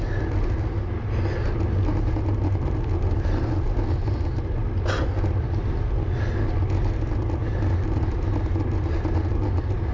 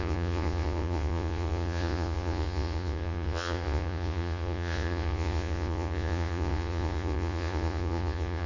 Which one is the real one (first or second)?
first